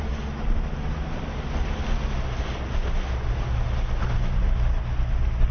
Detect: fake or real real